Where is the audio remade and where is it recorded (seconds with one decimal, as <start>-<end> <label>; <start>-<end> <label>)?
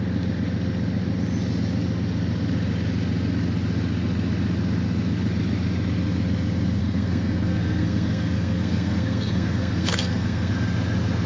0.0-6.8 recorded; 6.8-10.5 remade; 10.5-11.3 recorded